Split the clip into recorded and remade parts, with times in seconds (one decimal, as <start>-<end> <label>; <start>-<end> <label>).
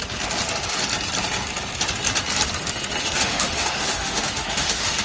0.0-3.0 recorded; 3.0-5.0 remade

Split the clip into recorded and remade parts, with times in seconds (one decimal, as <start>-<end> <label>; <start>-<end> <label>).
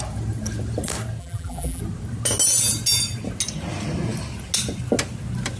0.0-1.2 recorded; 1.2-1.8 remade; 1.8-5.6 recorded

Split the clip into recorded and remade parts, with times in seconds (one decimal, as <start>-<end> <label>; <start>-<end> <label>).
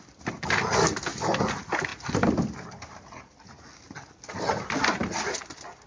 0.0-5.9 recorded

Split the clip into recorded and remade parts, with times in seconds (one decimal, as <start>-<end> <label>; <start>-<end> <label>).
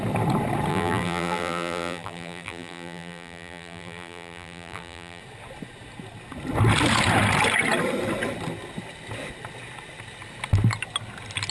0.0-0.7 recorded; 0.7-5.2 remade; 5.2-11.5 recorded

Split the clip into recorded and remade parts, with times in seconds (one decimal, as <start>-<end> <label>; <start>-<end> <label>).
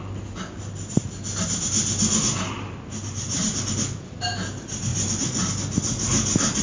0.0-6.6 recorded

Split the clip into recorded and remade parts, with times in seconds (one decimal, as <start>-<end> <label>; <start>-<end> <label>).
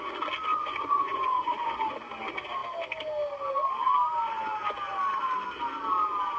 0.0-0.5 recorded; 0.5-1.7 remade; 1.7-6.4 recorded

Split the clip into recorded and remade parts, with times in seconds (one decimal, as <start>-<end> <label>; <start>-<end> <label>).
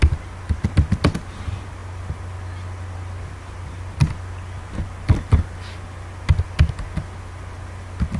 0.0-8.2 recorded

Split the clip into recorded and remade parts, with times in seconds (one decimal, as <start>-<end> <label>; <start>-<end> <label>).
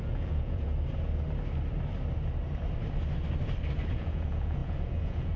0.0-0.7 remade; 0.7-3.9 recorded; 3.9-5.4 remade